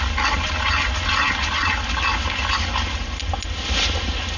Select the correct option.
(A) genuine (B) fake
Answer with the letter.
A